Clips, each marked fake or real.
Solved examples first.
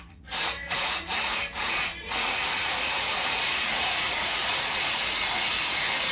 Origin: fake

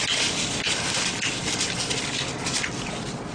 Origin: real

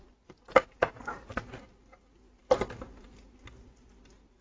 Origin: real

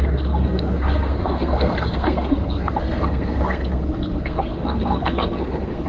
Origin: fake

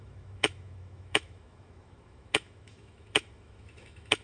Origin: fake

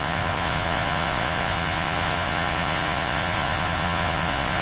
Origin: fake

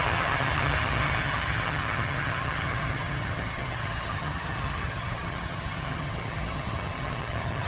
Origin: fake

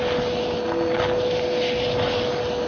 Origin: real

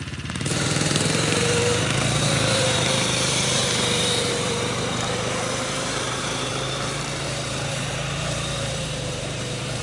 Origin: fake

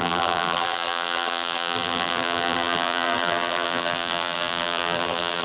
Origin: fake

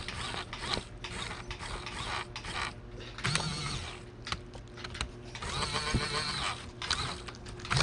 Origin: real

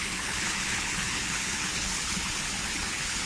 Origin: fake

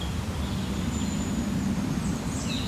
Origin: real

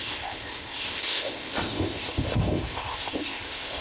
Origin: fake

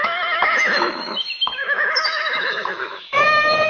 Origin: fake